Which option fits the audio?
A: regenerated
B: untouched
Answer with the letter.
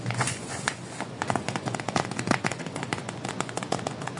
A